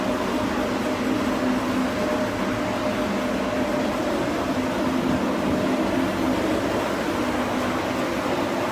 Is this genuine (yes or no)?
yes